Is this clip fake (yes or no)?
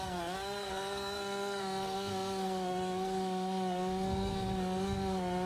yes